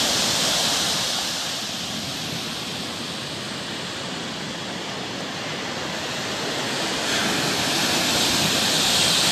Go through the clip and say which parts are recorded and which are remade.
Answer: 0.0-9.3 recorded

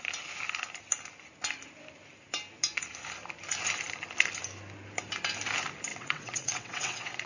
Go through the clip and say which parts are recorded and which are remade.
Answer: 0.0-5.9 recorded; 5.9-7.3 remade

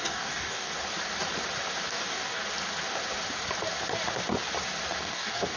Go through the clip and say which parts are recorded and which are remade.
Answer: 0.0-0.7 remade; 0.7-1.9 recorded; 1.9-2.4 remade; 2.4-5.0 recorded; 5.0-5.6 remade

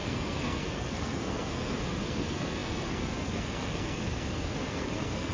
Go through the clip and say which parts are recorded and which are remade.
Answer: 0.0-5.3 remade